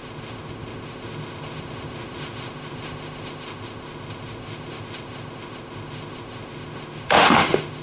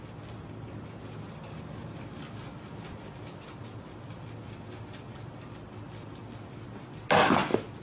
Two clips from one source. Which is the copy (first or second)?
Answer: first